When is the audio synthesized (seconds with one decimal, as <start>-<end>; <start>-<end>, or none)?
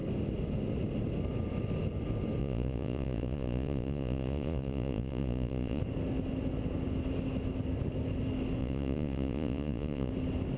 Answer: 2.4-5.8; 8.6-10.1